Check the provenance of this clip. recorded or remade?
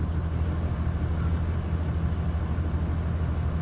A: recorded